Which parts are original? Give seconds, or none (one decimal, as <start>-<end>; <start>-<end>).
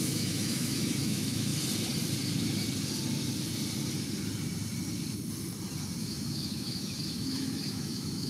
1.5-6.0